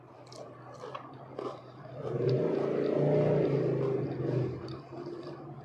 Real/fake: real